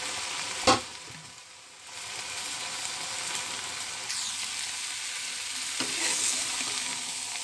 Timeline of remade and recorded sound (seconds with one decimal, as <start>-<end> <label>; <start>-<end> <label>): 0.0-7.4 recorded